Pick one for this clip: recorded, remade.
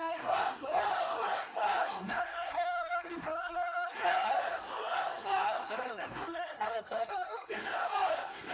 remade